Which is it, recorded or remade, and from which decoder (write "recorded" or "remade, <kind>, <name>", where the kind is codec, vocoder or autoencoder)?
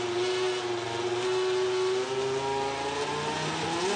recorded